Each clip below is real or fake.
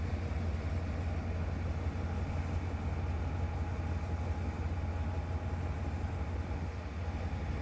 real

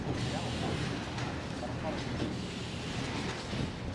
real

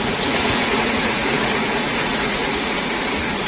fake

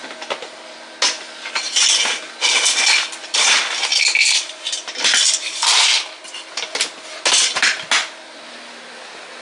real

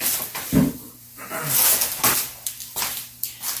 real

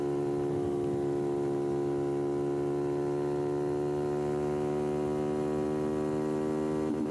real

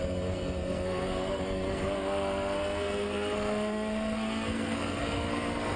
fake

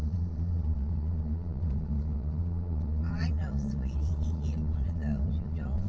fake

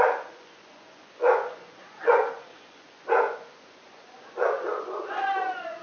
fake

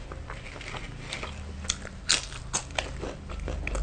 real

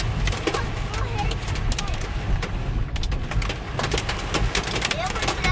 real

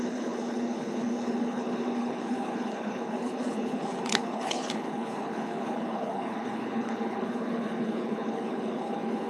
fake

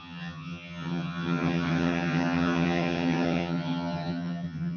fake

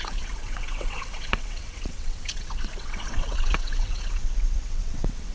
fake